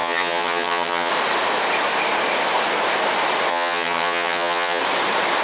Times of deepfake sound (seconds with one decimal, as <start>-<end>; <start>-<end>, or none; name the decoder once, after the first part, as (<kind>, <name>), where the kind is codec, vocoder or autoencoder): 0.0-1.1 (vocoder, HiFi-GAN); 3.5-4.8